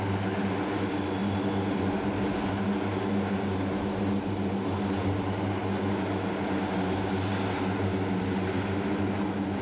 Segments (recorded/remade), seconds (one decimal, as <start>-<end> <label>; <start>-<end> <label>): 0.0-9.6 recorded